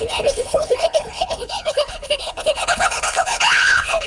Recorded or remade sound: remade